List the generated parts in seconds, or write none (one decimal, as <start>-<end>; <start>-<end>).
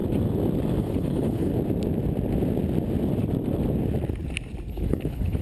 0.8-1.5; 4.7-5.4